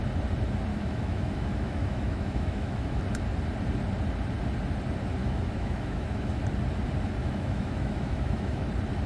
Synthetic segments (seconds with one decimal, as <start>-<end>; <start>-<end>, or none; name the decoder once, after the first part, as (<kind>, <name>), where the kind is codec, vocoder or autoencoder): 0.7-3.0 (autoencoder, DAC-VAE); 5.2-6.4; 7.2-8.6